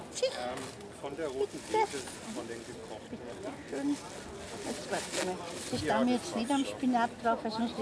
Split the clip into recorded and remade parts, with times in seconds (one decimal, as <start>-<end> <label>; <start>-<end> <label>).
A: 0.0-7.8 recorded